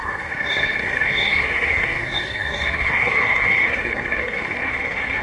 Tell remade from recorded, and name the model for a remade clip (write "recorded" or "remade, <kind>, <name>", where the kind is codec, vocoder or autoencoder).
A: remade, codec, SNAC